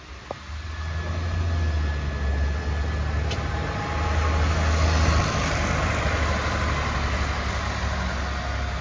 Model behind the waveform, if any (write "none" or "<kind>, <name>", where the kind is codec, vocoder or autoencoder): none